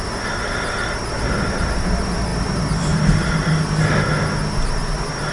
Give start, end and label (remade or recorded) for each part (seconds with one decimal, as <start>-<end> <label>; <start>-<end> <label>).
0.0-5.3 recorded